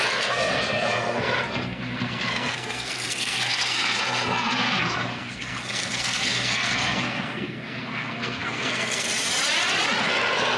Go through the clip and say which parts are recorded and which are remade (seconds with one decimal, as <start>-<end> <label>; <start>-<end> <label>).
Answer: 0.0-9.1 remade; 9.1-10.0 recorded; 10.0-10.6 remade